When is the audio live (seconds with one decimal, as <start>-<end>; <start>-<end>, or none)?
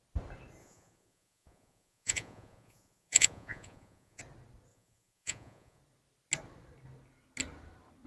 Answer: 0.0-0.6; 4.2-4.7; 5.8-8.1